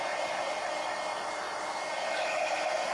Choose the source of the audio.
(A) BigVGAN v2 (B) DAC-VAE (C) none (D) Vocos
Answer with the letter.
C